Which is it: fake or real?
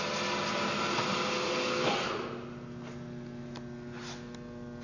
real